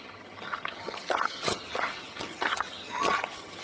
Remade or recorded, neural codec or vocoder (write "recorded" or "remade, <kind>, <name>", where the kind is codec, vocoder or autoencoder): remade, vocoder, HiFi-GAN